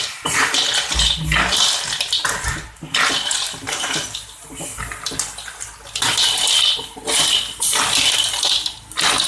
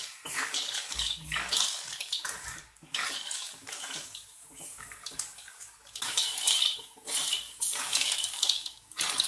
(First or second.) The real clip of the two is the first